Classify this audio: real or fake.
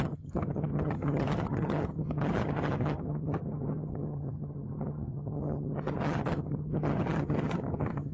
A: fake